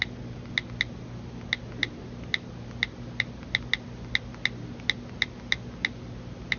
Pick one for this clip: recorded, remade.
recorded